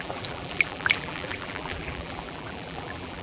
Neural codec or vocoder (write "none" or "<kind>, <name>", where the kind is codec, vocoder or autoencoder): vocoder, BigVGAN v2